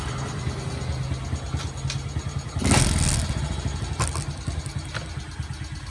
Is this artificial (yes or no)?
no